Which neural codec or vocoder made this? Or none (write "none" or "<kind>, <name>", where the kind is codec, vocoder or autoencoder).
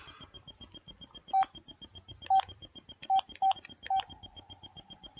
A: none